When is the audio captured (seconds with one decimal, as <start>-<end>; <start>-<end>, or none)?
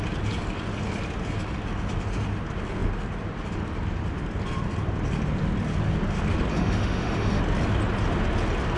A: 0.0-6.5; 7.4-8.8